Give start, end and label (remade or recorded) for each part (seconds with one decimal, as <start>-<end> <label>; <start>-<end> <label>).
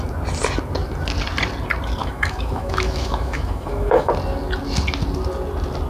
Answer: 0.0-2.0 recorded; 2.0-4.1 remade; 4.1-5.9 recorded